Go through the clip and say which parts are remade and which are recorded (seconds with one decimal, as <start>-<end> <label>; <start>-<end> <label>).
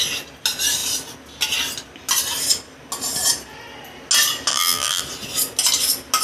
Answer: 0.0-4.5 recorded; 4.5-5.0 remade; 5.0-6.2 recorded